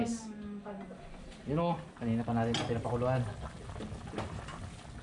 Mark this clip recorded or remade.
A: recorded